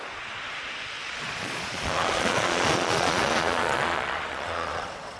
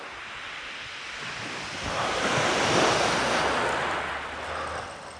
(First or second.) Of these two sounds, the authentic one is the second